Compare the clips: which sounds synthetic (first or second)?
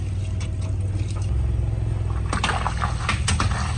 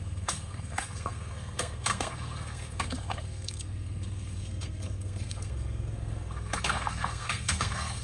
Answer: second